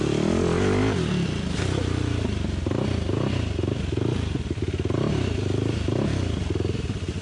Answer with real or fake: real